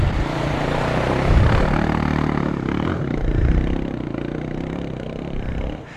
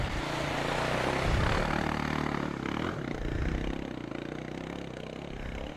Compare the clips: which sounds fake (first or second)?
first